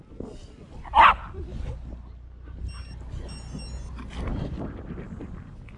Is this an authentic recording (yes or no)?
yes